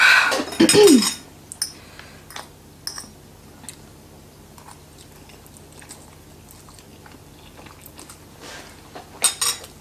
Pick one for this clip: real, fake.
real